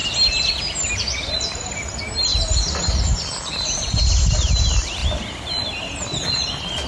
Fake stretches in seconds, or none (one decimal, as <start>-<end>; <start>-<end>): 5.0-5.6